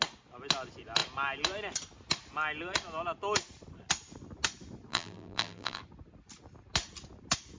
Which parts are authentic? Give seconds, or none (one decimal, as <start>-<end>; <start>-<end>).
0.0-4.9; 5.8-7.6